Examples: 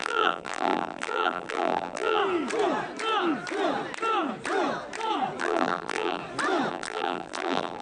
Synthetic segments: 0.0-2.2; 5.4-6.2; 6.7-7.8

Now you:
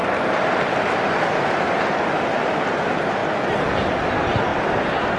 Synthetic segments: 0.0-2.4; 3.2-4.1; 4.5-5.2